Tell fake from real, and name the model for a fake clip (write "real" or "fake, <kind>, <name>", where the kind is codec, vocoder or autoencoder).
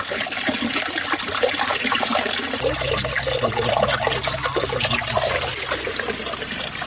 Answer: real